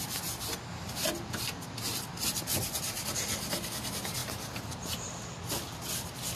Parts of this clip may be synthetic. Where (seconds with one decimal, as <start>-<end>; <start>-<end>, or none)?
none